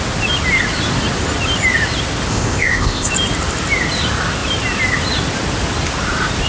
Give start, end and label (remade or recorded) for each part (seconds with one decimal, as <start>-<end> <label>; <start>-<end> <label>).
0.0-2.3 recorded; 2.3-3.1 remade; 3.1-6.5 recorded